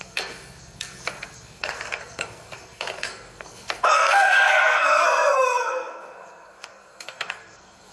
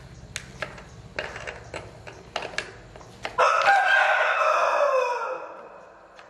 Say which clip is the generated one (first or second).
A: first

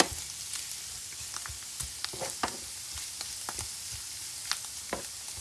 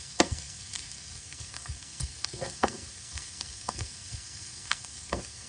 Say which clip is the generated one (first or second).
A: second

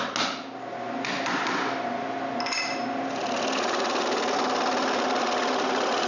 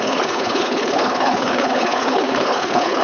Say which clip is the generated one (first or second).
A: second